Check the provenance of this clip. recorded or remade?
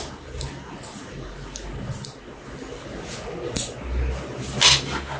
recorded